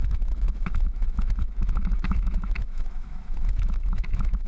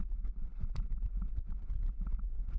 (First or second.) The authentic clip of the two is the second